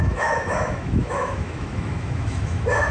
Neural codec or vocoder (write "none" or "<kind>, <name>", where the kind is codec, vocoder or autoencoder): autoencoder, DAC-VAE